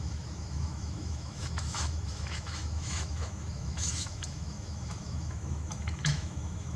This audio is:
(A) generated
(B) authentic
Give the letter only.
A